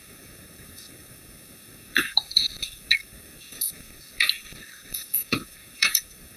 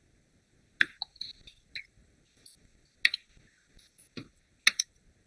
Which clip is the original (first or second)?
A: second